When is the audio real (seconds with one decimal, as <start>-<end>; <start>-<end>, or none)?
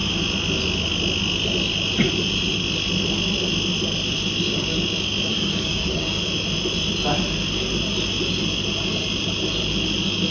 0.0-5.3; 6.2-10.3